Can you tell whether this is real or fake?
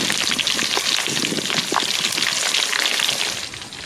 real